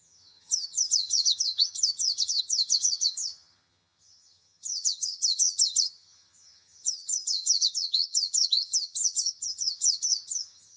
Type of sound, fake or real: fake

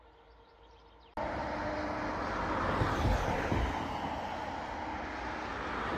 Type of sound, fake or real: real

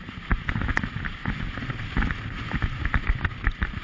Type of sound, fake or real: real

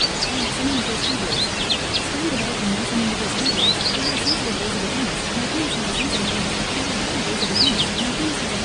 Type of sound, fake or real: real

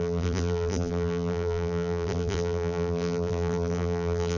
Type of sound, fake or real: fake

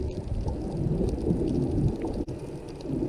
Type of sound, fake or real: real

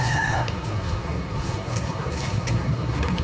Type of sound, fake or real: fake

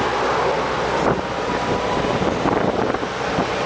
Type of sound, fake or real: real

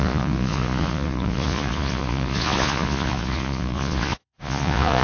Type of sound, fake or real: fake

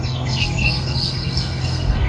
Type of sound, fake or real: fake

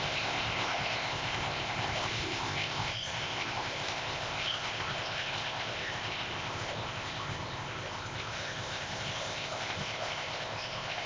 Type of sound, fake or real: fake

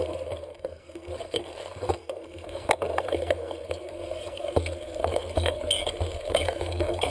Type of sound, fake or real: fake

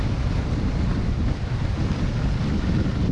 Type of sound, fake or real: fake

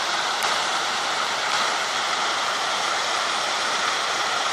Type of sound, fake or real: fake